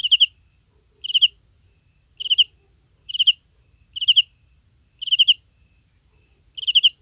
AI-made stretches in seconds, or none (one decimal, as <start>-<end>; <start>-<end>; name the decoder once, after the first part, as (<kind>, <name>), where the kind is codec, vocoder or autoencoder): none